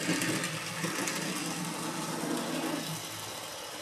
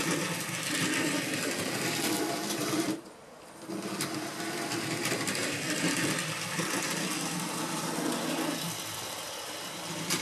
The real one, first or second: first